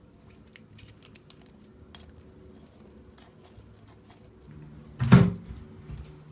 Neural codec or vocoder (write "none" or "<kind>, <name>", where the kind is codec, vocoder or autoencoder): none